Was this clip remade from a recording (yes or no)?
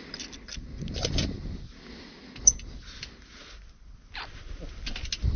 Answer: no